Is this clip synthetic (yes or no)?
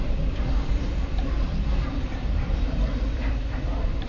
yes